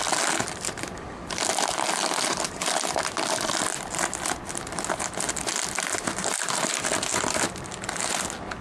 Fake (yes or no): no